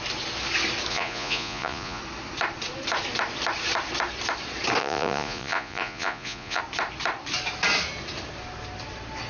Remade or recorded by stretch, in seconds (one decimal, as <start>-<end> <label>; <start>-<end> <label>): 0.0-0.9 recorded; 0.9-2.0 remade; 2.0-4.8 recorded; 4.8-6.6 remade; 6.6-9.3 recorded